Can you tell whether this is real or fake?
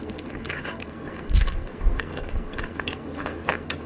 fake